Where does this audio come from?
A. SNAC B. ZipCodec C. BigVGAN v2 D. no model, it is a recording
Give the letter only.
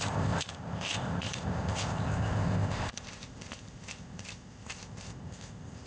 B